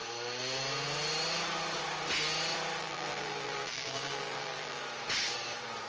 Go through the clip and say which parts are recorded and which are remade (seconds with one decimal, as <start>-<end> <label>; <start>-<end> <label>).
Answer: 0.0-2.8 recorded; 2.8-4.8 remade; 4.8-5.9 recorded